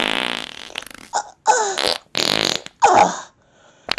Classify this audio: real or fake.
real